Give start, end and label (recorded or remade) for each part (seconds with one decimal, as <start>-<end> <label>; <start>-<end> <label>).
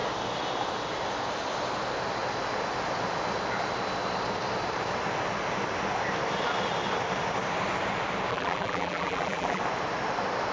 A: 0.0-8.3 recorded; 8.3-9.6 remade; 9.6-10.5 recorded